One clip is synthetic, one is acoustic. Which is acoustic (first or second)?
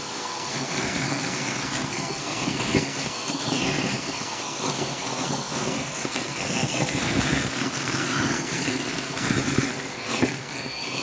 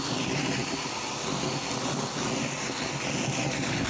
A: second